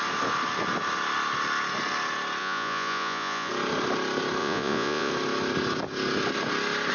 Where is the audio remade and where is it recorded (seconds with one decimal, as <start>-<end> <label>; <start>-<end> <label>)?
0.0-2.4 recorded; 2.4-3.5 remade; 3.5-4.4 recorded; 4.4-5.1 remade; 5.1-6.9 recorded